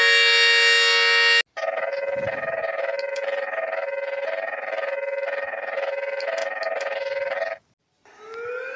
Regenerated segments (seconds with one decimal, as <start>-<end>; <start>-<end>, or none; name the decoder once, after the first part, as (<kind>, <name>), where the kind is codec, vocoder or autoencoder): none